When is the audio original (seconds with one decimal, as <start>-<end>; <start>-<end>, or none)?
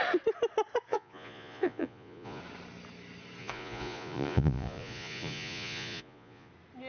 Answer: 0.0-0.9; 2.4-3.4; 6.5-6.9